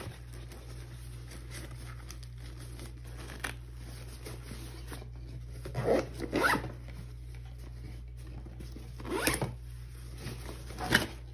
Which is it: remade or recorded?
recorded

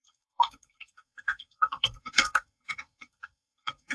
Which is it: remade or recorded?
remade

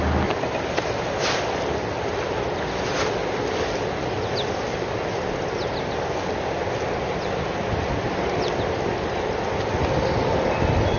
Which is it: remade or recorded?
recorded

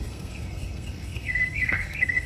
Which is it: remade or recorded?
remade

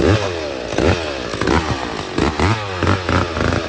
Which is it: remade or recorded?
recorded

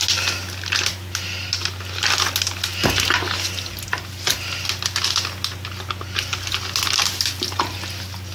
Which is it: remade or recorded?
recorded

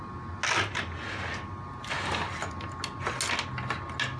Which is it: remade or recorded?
recorded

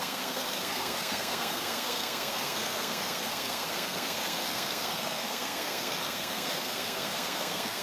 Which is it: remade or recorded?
remade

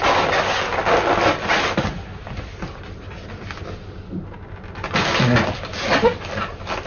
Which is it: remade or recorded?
recorded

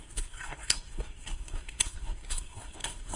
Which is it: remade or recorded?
remade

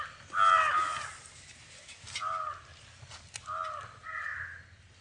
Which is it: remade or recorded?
recorded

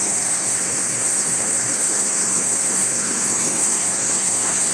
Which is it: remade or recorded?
remade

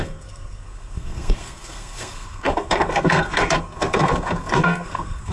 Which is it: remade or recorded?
remade